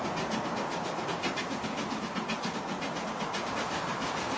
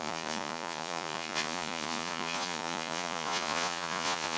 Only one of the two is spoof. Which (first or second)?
second